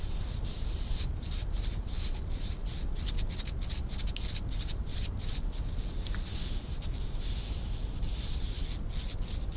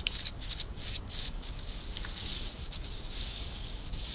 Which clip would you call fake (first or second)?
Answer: second